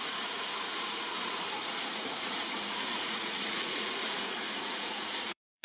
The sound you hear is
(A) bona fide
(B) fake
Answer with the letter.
B